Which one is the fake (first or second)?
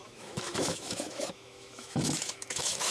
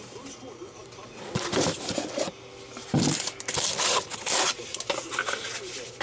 first